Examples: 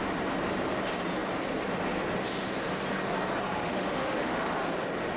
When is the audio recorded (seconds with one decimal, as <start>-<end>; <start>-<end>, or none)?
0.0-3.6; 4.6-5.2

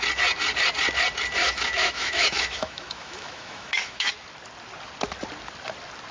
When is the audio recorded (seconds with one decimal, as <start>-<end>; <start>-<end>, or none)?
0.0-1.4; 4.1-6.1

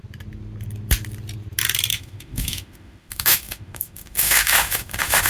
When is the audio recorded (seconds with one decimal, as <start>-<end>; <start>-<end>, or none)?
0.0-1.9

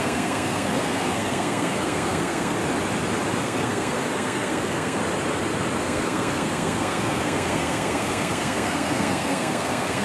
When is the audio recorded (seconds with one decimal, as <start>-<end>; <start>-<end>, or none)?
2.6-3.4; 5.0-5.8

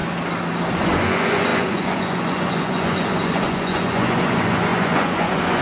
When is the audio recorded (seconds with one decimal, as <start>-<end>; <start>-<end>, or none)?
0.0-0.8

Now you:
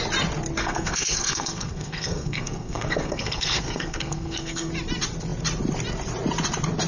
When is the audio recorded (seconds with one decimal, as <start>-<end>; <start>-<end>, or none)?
0.0-0.6; 4.7-6.9

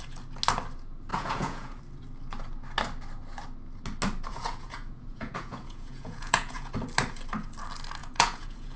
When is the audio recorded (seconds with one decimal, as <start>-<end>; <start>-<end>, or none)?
0.0-1.1; 1.8-4.3; 6.7-8.0

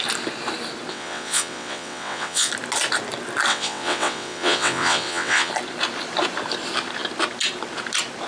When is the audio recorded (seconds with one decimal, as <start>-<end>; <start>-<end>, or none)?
0.0-0.9; 2.5-3.5; 5.5-8.3